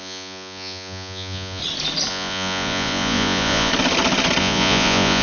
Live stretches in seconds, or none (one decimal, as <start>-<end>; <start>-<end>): 1.6-2.1; 3.7-4.4